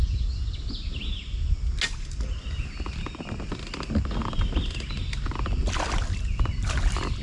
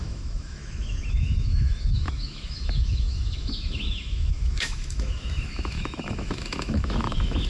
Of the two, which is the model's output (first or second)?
second